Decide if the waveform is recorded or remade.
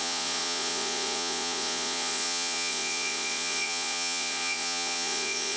remade